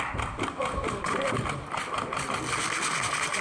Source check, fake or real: real